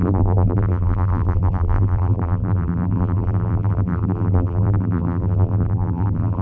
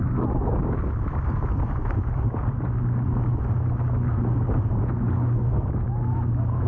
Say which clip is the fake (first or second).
first